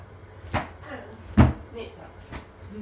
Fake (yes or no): no